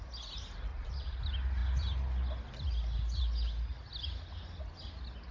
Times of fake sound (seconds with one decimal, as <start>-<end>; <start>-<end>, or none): 0.7-1.2